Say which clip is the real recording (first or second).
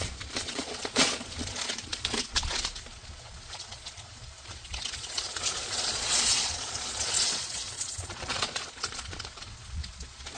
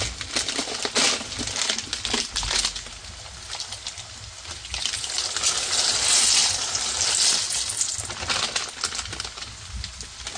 second